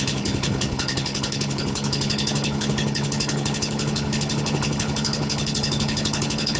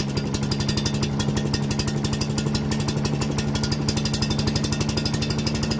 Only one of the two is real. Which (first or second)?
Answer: second